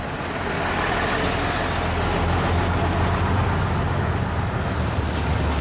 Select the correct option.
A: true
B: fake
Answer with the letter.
A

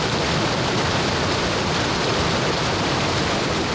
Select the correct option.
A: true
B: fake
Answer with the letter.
A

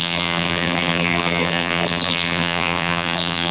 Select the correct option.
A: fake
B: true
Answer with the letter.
A